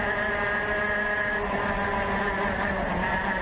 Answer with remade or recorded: recorded